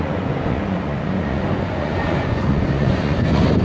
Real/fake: fake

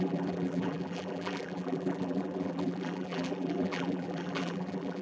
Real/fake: fake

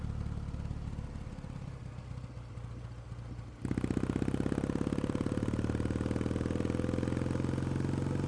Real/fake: real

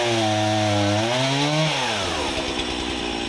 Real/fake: real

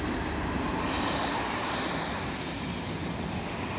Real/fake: real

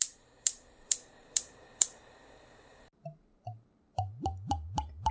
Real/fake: fake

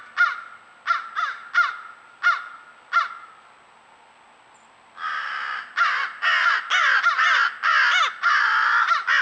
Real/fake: real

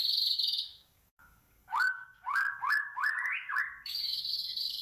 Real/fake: fake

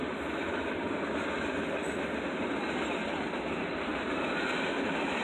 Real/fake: real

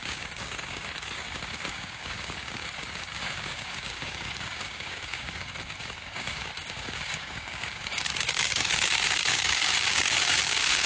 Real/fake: fake